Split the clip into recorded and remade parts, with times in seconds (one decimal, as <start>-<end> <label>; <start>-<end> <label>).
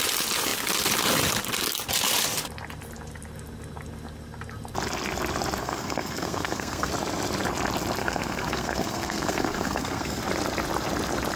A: 0.0-5.6 recorded; 5.6-6.9 remade; 6.9-8.0 recorded; 8.0-10.2 remade; 10.2-11.4 recorded